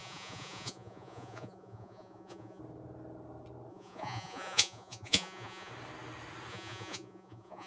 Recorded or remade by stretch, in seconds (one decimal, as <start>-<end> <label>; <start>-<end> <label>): 0.0-2.6 remade; 2.6-3.7 recorded; 3.7-5.7 remade; 5.7-6.5 recorded; 6.5-7.7 remade